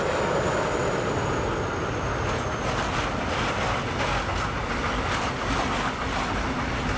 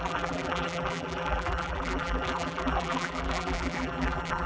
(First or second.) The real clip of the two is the first